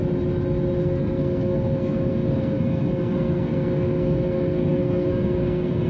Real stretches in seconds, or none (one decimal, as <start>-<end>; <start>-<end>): 0.0-0.8